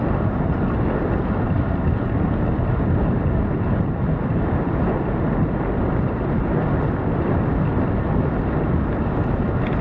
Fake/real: real